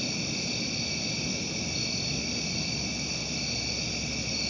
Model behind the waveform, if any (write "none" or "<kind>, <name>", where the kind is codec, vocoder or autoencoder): none